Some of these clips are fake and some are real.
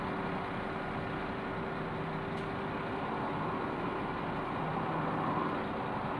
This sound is real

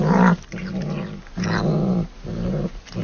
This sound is real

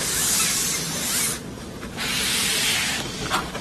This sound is real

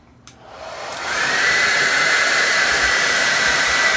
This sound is fake